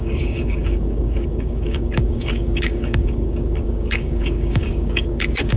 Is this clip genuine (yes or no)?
no